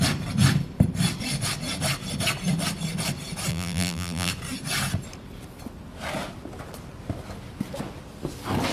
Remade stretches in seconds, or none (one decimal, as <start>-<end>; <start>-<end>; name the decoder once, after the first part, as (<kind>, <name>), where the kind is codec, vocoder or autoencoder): 3.5-4.3 (vocoder, BigVGAN v2)